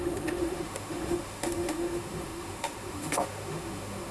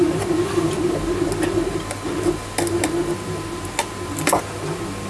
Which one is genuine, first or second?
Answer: second